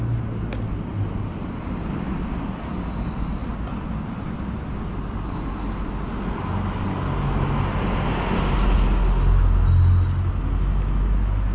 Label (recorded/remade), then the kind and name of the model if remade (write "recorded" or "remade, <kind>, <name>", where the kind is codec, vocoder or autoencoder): recorded